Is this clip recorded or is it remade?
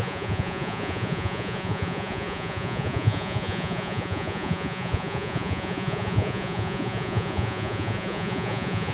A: remade